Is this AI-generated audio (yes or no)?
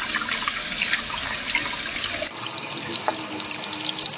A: no